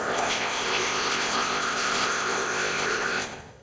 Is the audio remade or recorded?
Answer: remade